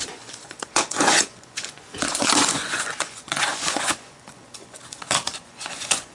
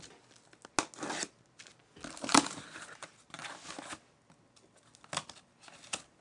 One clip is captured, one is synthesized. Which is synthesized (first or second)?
first